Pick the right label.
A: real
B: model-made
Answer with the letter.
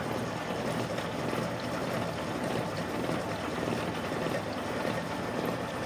A